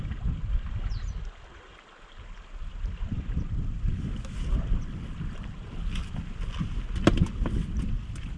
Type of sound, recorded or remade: recorded